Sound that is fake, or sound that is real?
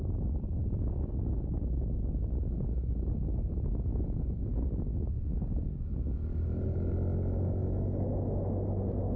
real